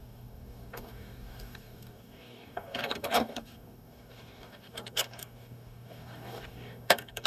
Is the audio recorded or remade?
remade